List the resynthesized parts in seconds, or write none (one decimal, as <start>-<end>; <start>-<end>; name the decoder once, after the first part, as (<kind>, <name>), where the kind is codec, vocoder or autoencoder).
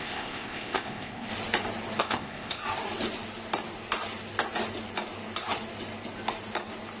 0.0-1.3 (codec, ZipCodec); 2.0-2.6